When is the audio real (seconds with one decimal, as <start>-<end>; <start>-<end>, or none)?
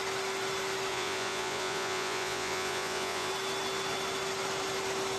0.0-0.9; 3.3-5.2